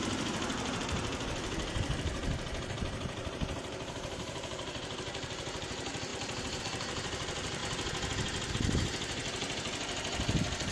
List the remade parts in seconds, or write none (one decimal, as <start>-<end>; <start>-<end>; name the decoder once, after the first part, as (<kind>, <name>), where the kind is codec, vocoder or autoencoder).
0.0-2.2 (vocoder, BigVGAN v2); 2.7-7.6; 8.5-9.2